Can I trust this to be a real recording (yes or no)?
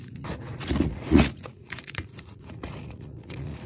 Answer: no